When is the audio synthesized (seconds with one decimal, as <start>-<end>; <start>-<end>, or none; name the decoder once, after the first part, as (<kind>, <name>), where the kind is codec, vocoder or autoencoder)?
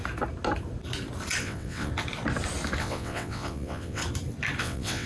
1.4-1.9 (vocoder, WaveNeXt); 2.8-4.0; 4.6-5.1